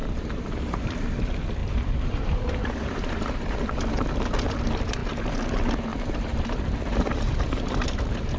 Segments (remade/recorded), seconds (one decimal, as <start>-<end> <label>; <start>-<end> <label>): 0.0-0.9 remade; 0.9-1.6 recorded; 1.6-3.8 remade; 3.8-5.9 recorded; 5.9-8.0 remade; 8.0-8.4 recorded